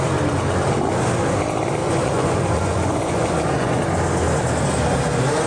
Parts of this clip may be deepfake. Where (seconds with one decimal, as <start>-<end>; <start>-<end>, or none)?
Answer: 1.8-3.8